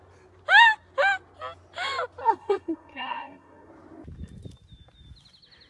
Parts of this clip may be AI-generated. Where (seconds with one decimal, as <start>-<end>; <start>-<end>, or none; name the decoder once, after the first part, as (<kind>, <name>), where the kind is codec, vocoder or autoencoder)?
2.2-3.7 (codec, SNAC)